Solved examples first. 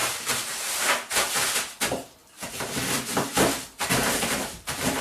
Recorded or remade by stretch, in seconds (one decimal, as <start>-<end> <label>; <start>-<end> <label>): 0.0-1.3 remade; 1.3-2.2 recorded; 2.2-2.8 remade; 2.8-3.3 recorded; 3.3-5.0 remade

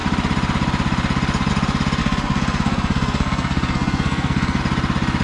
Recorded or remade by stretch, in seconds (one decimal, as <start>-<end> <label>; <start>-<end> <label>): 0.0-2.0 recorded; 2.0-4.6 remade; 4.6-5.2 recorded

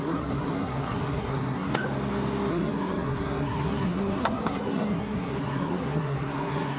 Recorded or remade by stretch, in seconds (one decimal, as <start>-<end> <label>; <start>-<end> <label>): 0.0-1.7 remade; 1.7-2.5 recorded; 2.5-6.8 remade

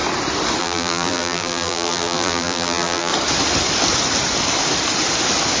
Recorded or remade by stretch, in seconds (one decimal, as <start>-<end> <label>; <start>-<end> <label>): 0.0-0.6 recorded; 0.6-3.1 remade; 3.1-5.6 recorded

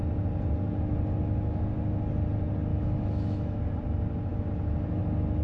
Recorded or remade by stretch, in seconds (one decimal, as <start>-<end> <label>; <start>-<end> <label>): 0.0-2.7 recorded; 2.7-3.6 remade; 3.6-5.4 recorded

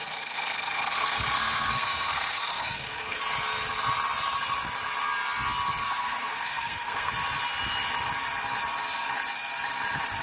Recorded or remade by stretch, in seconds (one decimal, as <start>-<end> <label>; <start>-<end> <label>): 0.0-3.2 remade; 3.2-5.8 recorded; 5.8-7.1 remade; 7.1-10.2 recorded

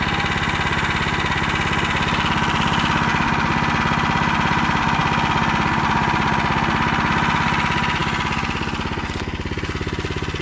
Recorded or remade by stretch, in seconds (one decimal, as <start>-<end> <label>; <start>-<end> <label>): 0.0-10.4 recorded

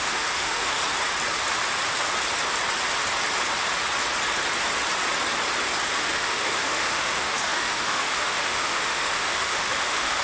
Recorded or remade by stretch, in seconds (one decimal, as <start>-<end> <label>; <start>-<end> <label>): 0.0-0.8 remade; 0.8-5.9 recorded; 5.9-10.2 remade